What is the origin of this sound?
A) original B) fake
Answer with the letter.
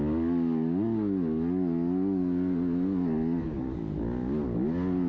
A